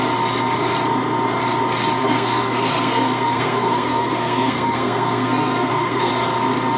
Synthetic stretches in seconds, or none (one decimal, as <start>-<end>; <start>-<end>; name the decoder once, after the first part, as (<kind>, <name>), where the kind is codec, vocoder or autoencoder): 2.0-6.1 (codec, SNAC)